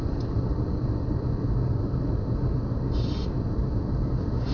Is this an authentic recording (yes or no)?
yes